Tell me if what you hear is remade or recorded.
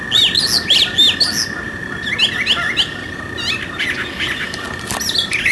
recorded